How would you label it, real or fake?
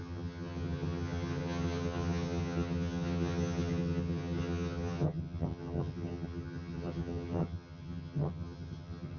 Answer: fake